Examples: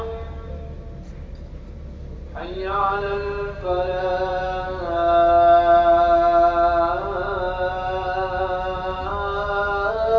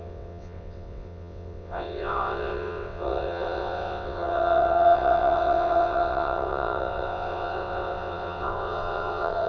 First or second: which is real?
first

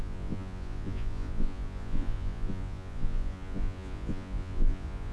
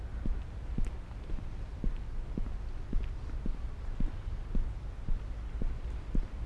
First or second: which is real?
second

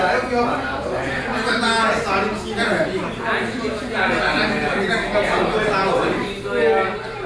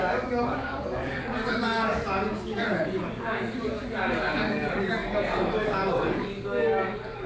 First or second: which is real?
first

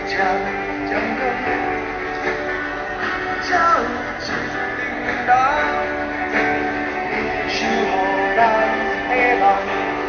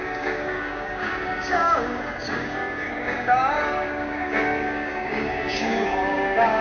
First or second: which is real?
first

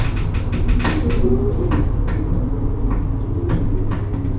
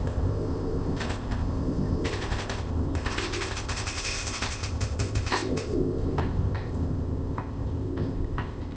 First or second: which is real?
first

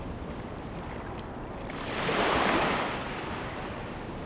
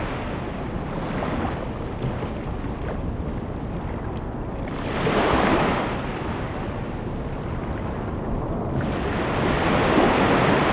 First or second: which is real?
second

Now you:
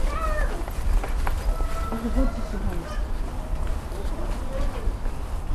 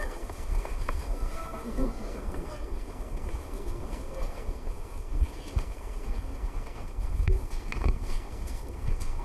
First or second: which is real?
first